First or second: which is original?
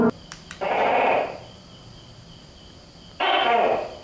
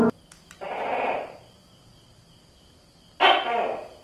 second